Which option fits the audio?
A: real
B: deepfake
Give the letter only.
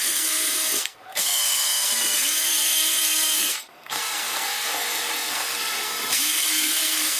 B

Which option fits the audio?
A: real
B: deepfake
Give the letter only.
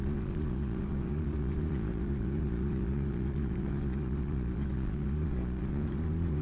B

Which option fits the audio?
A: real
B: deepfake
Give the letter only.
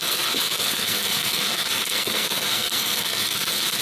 B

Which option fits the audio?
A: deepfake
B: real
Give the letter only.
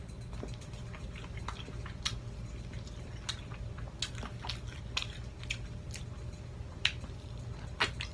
B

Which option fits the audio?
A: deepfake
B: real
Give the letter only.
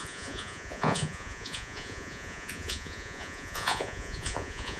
A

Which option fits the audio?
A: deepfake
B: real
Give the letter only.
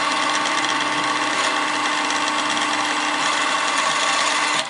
B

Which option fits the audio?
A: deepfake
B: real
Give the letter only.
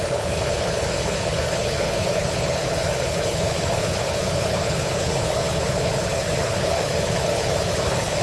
A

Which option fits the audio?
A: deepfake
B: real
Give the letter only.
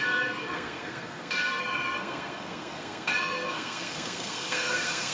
A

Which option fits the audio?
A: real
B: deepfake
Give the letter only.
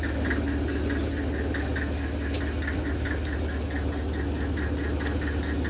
A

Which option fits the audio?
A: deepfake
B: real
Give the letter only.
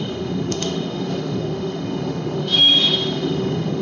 A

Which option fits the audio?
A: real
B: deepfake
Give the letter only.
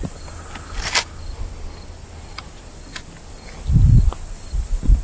A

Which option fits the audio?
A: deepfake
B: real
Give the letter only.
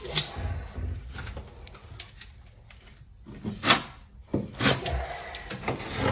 B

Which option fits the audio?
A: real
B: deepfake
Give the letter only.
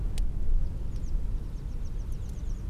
A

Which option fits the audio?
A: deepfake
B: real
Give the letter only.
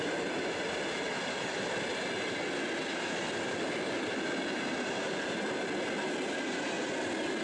B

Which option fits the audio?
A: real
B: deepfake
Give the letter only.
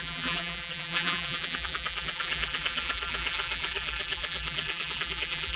B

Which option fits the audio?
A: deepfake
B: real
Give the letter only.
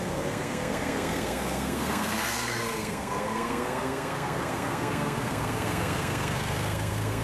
A